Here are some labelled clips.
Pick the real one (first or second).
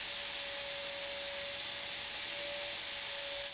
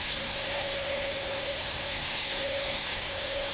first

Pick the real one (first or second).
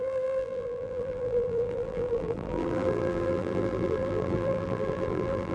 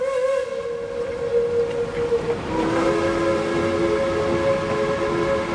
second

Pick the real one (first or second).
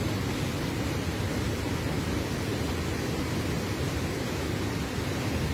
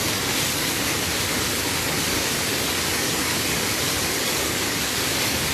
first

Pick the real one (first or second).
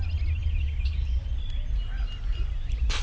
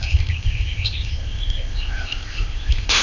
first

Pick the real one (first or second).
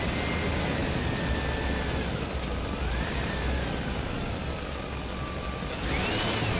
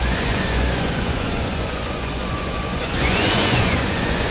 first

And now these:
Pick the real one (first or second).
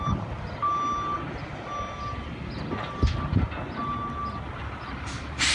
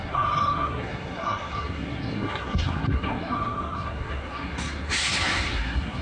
first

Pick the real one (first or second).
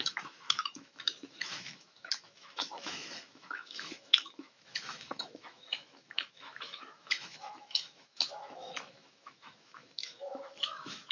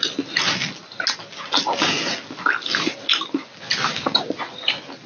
second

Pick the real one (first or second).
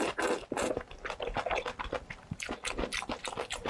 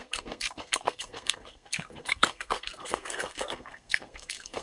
first